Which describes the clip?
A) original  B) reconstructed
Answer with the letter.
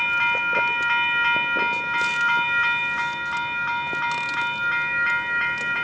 A